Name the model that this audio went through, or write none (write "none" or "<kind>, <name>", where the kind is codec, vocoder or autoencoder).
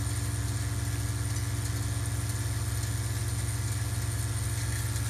none